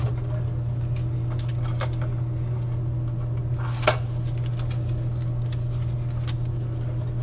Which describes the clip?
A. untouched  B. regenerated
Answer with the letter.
A